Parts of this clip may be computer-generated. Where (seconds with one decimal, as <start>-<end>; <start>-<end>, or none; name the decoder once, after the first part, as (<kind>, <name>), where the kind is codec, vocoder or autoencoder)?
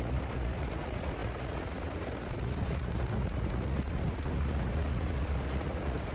0.0-6.1 (vocoder, Vocos)